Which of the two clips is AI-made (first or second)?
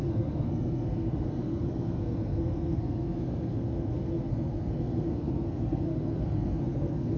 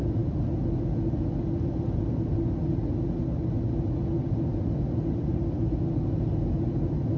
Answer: first